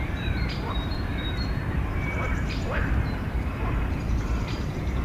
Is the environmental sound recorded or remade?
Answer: remade